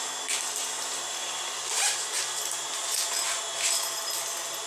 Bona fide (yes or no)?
yes